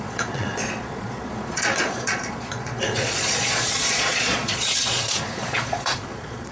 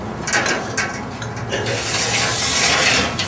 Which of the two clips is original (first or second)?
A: second